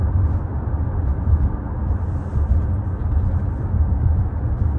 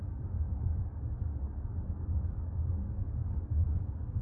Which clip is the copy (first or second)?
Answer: second